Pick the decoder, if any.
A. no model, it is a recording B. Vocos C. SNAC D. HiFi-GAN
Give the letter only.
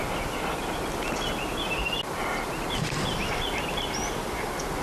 A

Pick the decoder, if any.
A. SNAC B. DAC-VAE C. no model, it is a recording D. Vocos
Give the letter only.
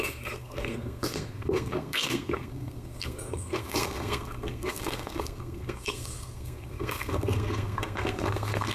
A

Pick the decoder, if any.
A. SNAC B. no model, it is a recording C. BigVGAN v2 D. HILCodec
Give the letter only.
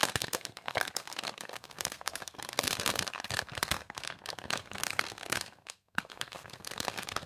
A